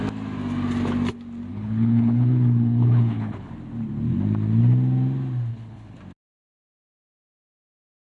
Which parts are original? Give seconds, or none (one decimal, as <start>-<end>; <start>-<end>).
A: 0.0-1.5; 3.5-5.5; 6.0-8.0